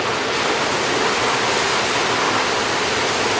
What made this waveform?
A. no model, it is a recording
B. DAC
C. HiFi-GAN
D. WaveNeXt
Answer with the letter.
A